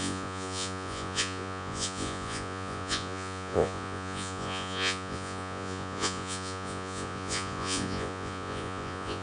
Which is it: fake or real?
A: fake